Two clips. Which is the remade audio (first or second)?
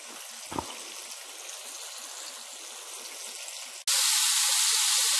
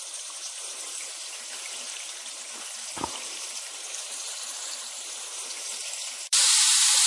second